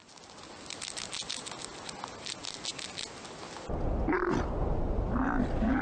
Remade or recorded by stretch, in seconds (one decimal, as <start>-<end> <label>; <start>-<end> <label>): 0.0-5.8 recorded